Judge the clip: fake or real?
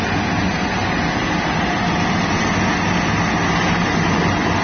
real